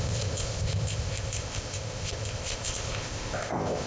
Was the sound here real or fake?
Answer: fake